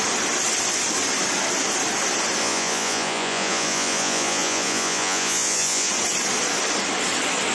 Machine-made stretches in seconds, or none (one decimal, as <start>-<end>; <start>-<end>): 2.4-5.9